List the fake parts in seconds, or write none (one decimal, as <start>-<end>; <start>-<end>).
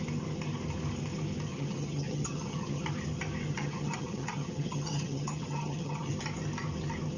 1.5-2.8; 3.5-6.1